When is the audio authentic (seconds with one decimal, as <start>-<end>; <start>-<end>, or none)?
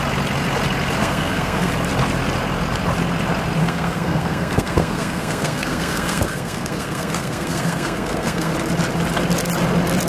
0.0-1.0; 1.7-3.6; 8.5-10.1